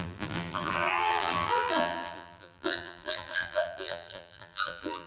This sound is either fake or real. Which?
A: fake